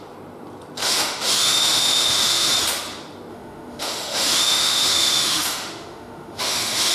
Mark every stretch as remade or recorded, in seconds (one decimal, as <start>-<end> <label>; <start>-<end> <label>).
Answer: 0.0-0.8 recorded; 0.8-2.5 remade; 2.5-3.3 recorded; 3.3-6.9 remade